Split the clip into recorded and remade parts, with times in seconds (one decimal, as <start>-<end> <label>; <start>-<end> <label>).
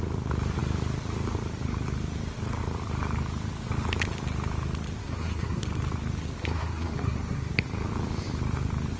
0.0-5.0 recorded; 5.0-5.6 remade; 5.6-6.4 recorded; 6.4-7.5 remade; 7.5-9.0 recorded